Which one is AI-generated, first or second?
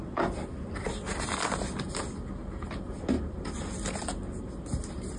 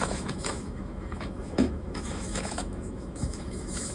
second